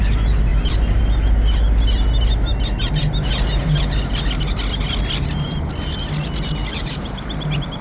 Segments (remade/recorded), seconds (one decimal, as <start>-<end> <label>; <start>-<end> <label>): 0.0-0.5 recorded; 0.5-1.0 remade; 1.0-6.6 recorded; 6.6-7.8 remade

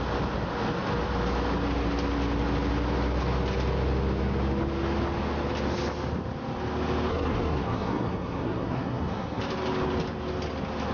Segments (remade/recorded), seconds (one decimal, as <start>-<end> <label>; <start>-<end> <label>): 0.0-7.1 recorded; 7.1-9.4 remade; 9.4-10.9 recorded

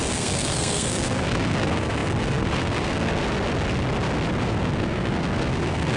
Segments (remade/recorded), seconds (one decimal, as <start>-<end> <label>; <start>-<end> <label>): 0.0-3.2 remade; 3.2-4.4 recorded; 4.4-6.0 remade